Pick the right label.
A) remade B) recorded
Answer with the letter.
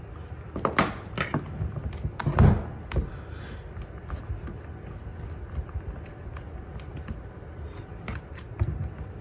B